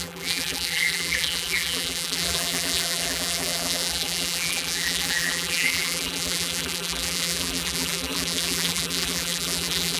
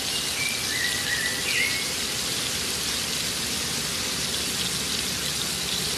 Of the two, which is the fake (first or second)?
first